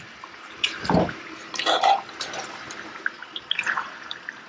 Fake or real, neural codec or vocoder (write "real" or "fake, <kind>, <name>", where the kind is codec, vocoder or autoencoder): fake, vocoder, BigVGAN v2